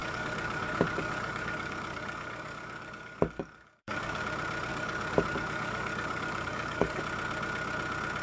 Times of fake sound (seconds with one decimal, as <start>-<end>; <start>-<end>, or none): 0.0-4.2; 4.7-7.0